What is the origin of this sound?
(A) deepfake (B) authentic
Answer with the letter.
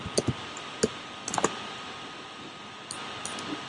B